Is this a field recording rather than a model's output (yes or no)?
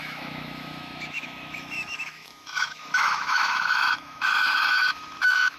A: no